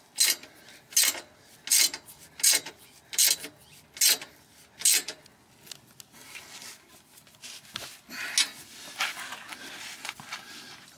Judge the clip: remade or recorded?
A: recorded